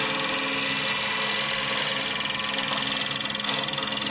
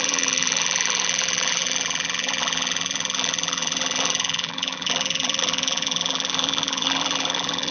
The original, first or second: first